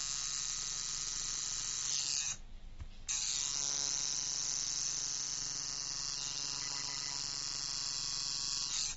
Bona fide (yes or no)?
yes